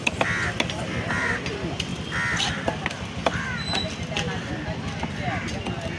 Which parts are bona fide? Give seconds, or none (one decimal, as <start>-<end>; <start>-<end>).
0.0-6.0